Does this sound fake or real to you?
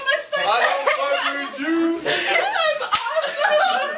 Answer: real